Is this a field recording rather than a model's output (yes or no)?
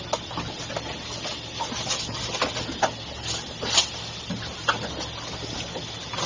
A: yes